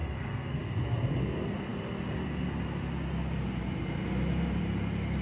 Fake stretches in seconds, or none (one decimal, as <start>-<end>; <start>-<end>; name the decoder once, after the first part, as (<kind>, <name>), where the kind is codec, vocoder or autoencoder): 0.0-0.6 (codec, SNAC)